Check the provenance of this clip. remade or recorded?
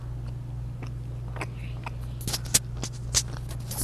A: recorded